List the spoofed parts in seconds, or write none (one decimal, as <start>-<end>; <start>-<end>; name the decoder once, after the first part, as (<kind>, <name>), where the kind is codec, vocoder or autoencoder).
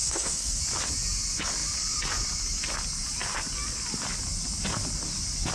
0.0-0.6 (codec, SNAC)